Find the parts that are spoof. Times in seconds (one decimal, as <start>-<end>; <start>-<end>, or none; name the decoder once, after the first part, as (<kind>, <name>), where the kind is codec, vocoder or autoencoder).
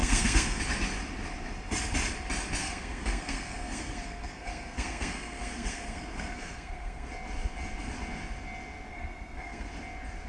0.0-0.6 (codec, SNAC); 2.6-7.1; 8.9-9.7